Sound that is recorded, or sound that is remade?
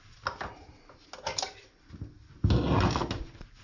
recorded